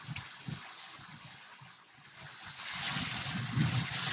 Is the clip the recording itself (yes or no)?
no